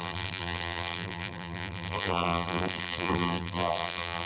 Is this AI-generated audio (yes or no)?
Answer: yes